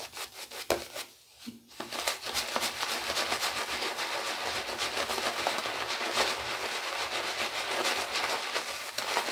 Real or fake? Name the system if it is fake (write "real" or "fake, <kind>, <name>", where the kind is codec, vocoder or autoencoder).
real